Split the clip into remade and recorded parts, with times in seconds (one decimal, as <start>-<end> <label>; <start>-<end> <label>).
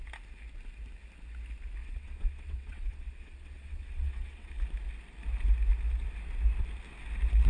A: 0.0-1.8 recorded; 1.8-4.5 remade; 4.5-7.5 recorded